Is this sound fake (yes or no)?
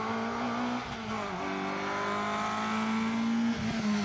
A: no